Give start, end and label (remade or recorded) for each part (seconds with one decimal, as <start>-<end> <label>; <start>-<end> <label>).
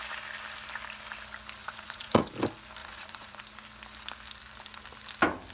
0.0-1.6 recorded; 1.6-2.3 remade; 2.3-2.8 recorded; 2.8-3.4 remade; 3.4-5.5 recorded